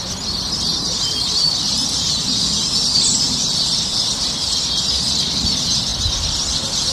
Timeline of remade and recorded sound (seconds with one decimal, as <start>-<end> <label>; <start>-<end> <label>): 0.0-0.7 recorded; 0.7-2.1 remade; 2.1-3.1 recorded; 3.1-5.2 remade; 5.2-6.9 recorded

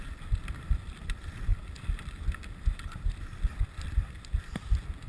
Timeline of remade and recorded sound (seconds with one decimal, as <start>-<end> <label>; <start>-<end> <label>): 0.0-1.5 recorded; 1.5-3.2 remade; 3.2-5.1 recorded

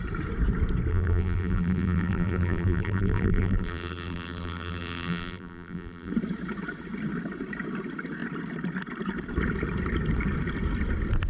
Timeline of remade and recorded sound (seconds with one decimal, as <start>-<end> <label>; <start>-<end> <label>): 0.0-0.9 recorded; 0.9-6.1 remade; 6.1-11.3 recorded

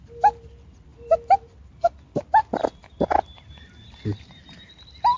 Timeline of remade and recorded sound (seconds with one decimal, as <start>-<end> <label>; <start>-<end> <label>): 0.0-0.9 recorded; 0.9-1.9 remade; 1.9-2.8 recorded; 2.8-3.7 remade; 3.7-5.2 recorded

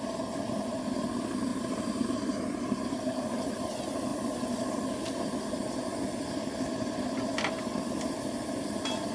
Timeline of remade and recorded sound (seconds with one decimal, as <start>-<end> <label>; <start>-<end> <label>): 0.0-1.5 recorded; 1.5-2.3 remade; 2.3-9.1 recorded